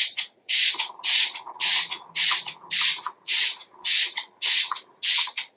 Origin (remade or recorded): remade